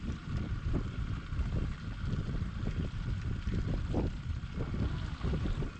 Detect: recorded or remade remade